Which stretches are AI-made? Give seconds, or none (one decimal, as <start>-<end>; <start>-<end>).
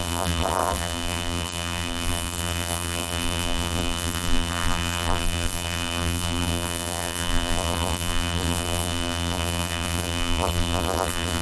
0.0-11.4